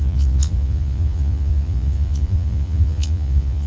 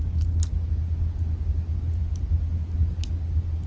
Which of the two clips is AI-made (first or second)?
first